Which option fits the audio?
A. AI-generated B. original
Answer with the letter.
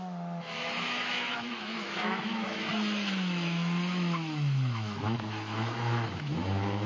A